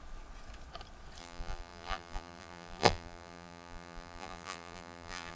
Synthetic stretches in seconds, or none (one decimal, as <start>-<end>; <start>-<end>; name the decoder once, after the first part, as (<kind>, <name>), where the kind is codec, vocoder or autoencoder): 1.2-5.3 (vocoder, BigVGAN v2)